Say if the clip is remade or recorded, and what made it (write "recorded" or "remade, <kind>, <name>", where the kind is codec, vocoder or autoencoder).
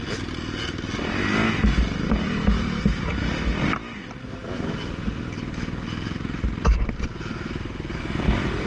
recorded